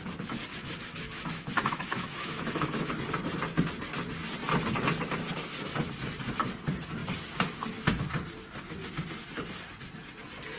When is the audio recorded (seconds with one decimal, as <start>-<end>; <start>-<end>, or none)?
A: 0.0-0.5; 2.9-10.6